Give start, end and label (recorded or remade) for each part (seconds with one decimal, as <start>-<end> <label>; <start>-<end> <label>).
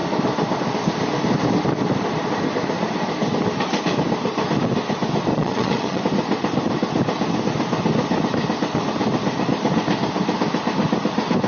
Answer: 0.0-5.3 recorded; 5.3-6.0 remade; 6.0-11.5 recorded